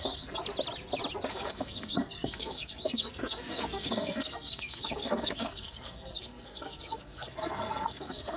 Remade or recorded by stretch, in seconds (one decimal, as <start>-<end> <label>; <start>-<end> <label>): 0.0-0.4 remade; 0.4-1.3 recorded; 1.3-8.4 remade